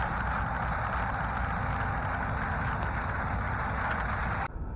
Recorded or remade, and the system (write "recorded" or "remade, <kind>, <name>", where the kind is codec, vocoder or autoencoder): recorded